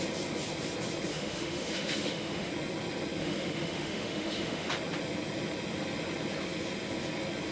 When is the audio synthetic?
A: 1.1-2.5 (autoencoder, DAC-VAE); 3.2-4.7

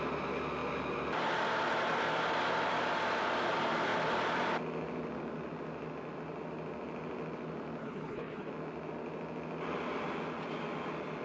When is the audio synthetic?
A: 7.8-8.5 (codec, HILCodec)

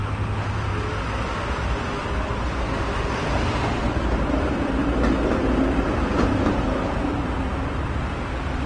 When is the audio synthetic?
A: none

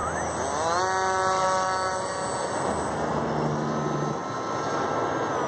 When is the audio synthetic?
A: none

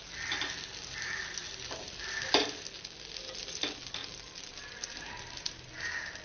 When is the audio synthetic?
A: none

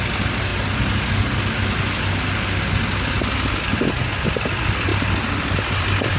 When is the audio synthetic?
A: none

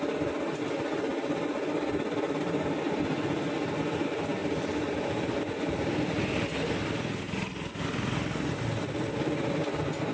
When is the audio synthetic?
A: 1.1-2.4 (vocoder, BigVGAN v2); 4.4-9.5

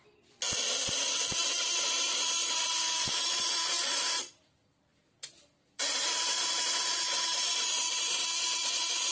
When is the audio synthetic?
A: 2.4-3.6 (vocoder, BigVGAN v2); 4.9-7.5